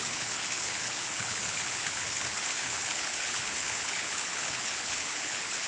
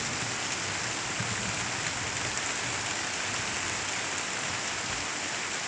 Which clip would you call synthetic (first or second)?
first